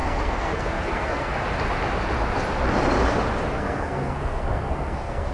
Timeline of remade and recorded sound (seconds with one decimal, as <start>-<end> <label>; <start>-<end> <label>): 0.0-1.3 remade; 1.3-3.5 recorded; 3.5-5.3 remade